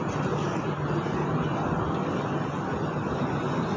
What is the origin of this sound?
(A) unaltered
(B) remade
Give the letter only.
A